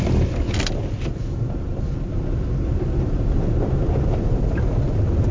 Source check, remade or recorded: recorded